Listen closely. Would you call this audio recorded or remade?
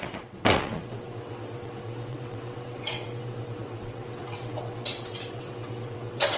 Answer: remade